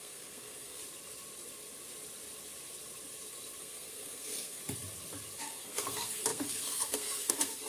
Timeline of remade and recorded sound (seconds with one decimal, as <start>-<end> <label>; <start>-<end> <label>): 0.0-0.8 remade; 0.8-3.6 recorded; 3.6-4.6 remade; 4.6-5.4 recorded; 5.4-7.7 remade